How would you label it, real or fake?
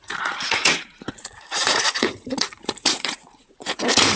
fake